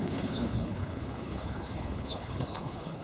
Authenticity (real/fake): fake